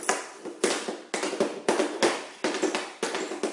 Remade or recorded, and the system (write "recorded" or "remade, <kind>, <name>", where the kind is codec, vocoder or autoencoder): recorded